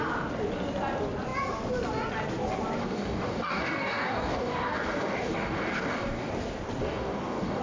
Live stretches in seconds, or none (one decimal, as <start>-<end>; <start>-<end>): 0.0-2.8; 6.3-6.8